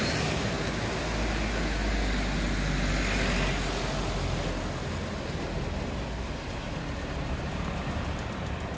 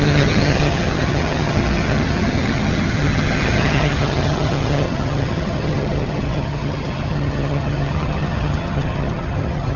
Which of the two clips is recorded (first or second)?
first